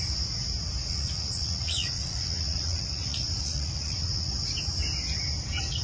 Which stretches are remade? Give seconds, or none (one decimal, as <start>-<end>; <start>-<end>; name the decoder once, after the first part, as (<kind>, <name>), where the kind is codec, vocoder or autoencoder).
0.8-4.3 (vocoder, Vocos)